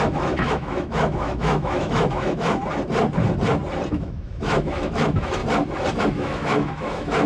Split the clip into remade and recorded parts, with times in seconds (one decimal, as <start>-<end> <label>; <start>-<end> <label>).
0.0-2.6 remade; 2.6-3.9 recorded; 3.9-5.4 remade; 5.4-6.0 recorded; 6.0-7.3 remade